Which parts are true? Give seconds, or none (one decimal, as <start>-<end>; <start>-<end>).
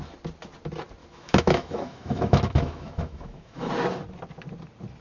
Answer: 0.0-1.0; 3.7-5.0